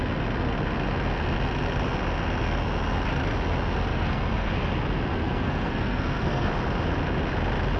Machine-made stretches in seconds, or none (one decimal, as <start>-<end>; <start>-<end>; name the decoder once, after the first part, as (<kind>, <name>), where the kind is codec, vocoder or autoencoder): 3.9-4.5 (codec, SNAC); 5.1-6.5